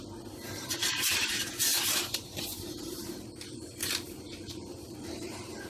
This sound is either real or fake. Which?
fake